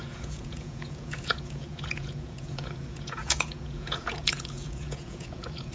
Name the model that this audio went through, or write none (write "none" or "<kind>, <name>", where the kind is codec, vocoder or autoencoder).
vocoder, Vocos